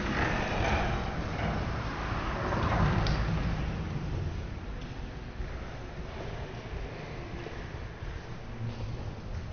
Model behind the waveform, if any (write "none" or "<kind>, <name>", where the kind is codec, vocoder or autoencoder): none